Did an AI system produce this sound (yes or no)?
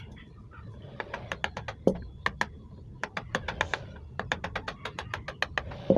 no